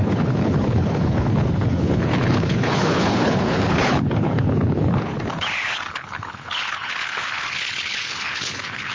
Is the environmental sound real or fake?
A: fake